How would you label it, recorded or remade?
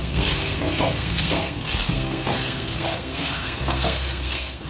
remade